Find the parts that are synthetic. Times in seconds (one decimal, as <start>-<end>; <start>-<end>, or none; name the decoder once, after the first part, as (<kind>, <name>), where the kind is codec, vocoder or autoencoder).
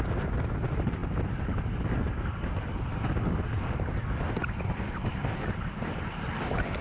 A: none